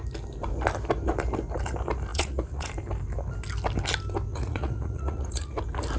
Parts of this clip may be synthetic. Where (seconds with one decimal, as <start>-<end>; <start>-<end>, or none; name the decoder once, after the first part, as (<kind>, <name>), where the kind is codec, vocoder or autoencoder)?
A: 2.1-2.7 (vocoder, Vocos); 4.3-5.6